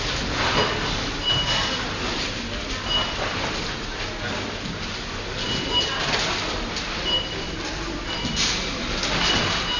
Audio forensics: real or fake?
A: real